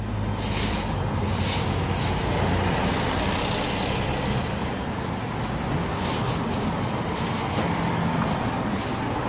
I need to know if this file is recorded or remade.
recorded